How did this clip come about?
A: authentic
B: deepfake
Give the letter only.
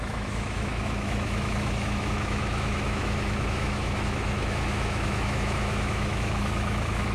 B